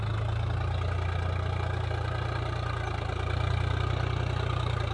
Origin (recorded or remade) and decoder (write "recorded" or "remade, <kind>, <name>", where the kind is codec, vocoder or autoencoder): recorded